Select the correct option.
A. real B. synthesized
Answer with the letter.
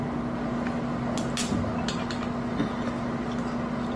A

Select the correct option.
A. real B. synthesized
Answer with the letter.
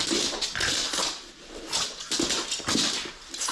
A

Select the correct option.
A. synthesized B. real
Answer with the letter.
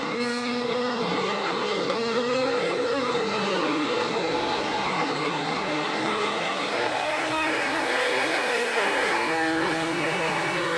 A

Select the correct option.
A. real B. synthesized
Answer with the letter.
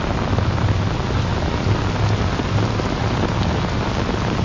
A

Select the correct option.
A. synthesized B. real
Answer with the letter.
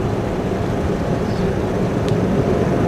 B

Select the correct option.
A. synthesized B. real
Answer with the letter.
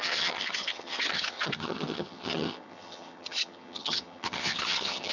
A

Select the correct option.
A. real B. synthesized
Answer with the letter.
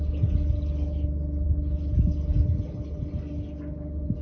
A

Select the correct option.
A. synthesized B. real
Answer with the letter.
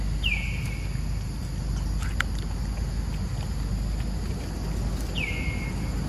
B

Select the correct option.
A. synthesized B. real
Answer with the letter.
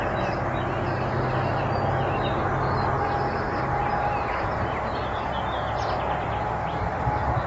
B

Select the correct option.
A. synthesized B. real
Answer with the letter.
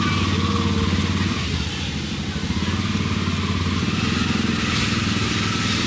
B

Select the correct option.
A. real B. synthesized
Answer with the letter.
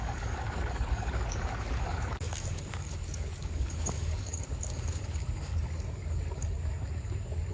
B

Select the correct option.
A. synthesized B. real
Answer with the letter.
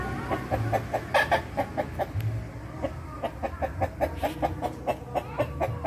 B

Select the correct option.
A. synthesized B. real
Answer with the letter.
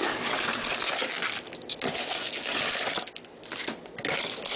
B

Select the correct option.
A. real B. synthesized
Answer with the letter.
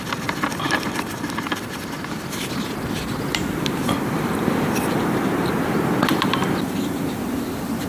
B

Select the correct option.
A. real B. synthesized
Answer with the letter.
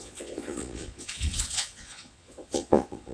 B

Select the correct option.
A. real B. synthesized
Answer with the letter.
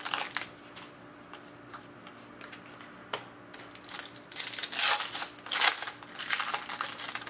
A